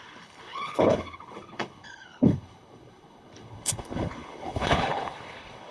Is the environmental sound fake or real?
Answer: fake